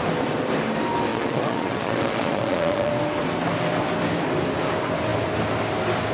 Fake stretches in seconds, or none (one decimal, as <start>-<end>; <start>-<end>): 1.1-2.9